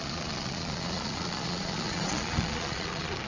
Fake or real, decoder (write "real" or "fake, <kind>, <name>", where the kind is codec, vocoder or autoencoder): fake, vocoder, Vocos